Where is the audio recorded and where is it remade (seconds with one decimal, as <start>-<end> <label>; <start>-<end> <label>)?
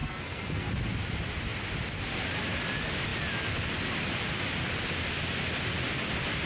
0.0-0.7 remade; 0.7-6.5 recorded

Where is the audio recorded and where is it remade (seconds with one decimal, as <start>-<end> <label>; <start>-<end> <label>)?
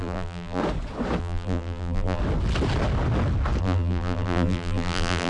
0.0-0.6 remade; 0.6-1.2 recorded; 1.2-2.2 remade; 2.2-3.6 recorded; 3.6-5.3 remade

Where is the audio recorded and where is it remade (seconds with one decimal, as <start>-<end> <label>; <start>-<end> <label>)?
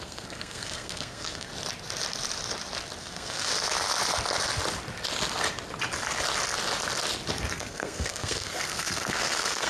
0.0-1.5 remade; 1.5-3.0 recorded; 3.0-3.5 remade; 3.5-7.5 recorded; 7.5-9.7 remade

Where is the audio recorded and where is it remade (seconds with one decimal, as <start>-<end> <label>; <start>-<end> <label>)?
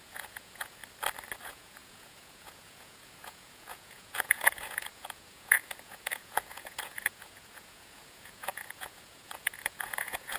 0.0-0.8 remade; 0.8-1.4 recorded; 1.4-10.4 remade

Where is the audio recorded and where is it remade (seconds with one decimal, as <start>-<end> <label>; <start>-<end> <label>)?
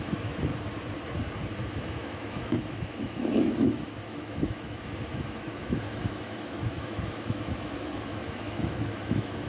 0.0-0.5 remade; 0.5-1.8 recorded; 1.8-9.5 remade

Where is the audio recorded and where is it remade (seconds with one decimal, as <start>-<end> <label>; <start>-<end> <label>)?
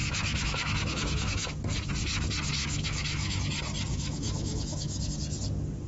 0.0-1.9 remade; 1.9-2.6 recorded; 2.6-3.4 remade; 3.4-3.9 recorded; 3.9-5.1 remade; 5.1-5.9 recorded